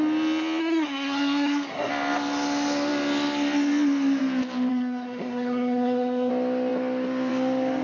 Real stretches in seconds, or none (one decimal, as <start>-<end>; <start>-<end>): 0.0-0.6; 1.9-4.7; 6.3-7.8